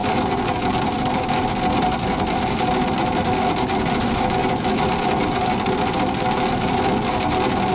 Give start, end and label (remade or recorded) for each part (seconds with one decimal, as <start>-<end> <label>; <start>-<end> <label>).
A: 0.0-3.3 remade; 3.3-4.4 recorded; 4.4-5.0 remade; 5.0-7.7 recorded